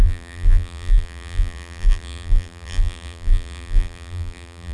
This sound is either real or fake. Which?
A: fake